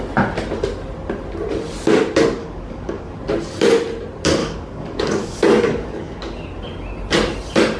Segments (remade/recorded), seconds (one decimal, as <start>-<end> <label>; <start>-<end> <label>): 0.0-2.4 recorded; 2.4-3.2 remade; 3.2-4.4 recorded; 4.4-6.2 remade; 6.2-7.8 recorded